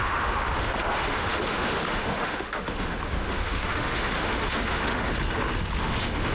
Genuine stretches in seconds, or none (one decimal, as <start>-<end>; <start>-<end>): 5.1-5.8